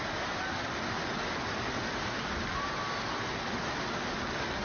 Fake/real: real